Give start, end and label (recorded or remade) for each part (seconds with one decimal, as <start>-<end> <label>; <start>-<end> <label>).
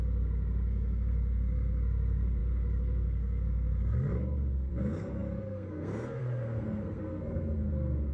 0.0-8.1 remade